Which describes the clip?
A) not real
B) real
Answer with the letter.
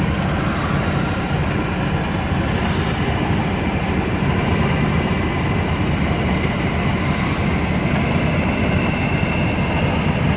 B